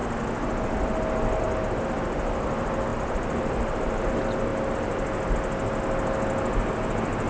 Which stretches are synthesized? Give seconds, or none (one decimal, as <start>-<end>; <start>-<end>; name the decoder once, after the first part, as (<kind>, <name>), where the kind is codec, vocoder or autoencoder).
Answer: 2.9-4.1 (vocoder, BigVGAN v2)